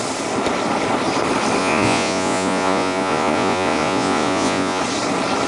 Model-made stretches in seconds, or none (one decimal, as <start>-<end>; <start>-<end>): 1.6-4.8